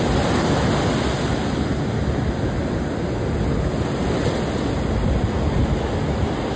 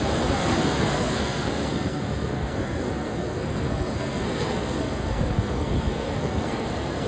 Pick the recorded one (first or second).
first